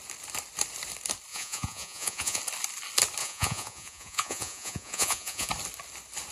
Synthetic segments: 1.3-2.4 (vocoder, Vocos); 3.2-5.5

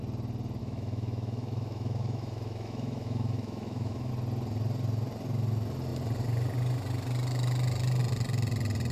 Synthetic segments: 0.6-4.1 (autoencoder, DAC-VAE)